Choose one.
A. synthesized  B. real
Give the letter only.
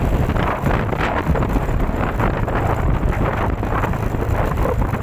B